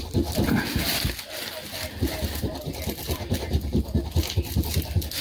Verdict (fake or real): real